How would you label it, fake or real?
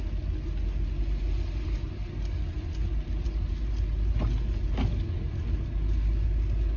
real